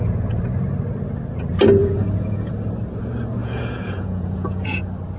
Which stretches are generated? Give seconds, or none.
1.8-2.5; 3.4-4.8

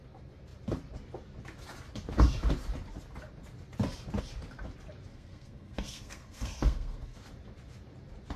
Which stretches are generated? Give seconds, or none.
5.1-7.2

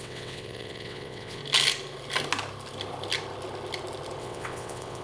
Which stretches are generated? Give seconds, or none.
0.0-1.4; 4.2-5.0

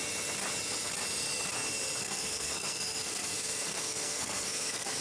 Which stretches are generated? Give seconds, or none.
2.0-5.0

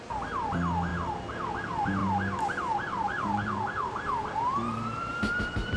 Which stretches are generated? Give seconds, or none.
2.0-5.8